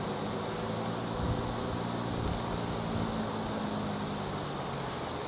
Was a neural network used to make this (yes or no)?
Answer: no